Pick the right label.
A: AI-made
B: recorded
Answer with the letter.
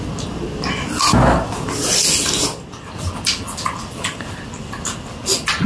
B